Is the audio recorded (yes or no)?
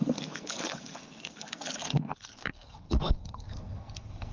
no